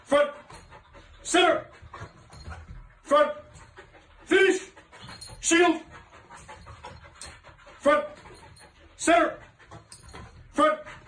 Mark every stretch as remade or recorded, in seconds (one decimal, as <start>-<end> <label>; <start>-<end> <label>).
0.0-11.1 recorded